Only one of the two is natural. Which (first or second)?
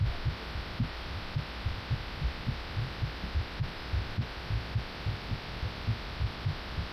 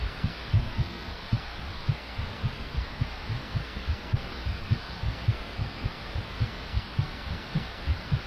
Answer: first